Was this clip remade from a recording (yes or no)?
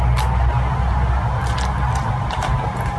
no